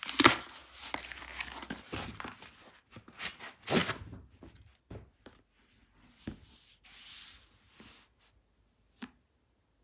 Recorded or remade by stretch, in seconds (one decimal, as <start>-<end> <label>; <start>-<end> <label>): 0.0-9.8 recorded